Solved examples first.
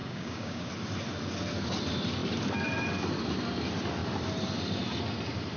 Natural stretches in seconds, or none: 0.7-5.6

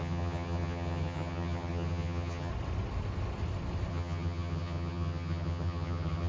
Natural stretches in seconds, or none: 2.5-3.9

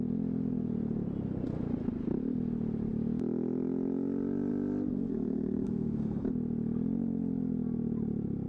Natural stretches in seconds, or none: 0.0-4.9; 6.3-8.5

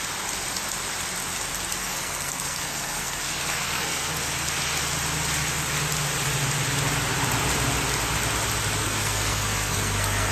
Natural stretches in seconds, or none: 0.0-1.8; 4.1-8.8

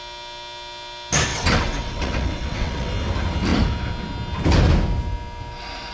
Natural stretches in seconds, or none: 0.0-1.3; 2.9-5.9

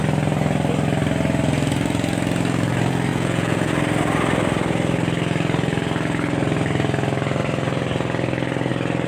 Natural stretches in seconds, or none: 0.0-3.1; 3.7-9.1

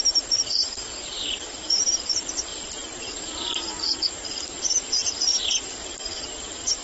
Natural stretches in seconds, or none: none